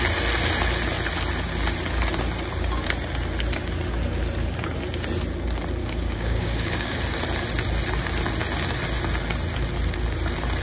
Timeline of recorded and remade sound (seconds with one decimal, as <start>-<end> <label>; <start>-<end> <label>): 0.0-5.8 recorded; 5.8-7.0 remade; 7.0-10.6 recorded